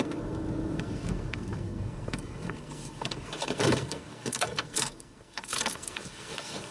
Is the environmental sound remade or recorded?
remade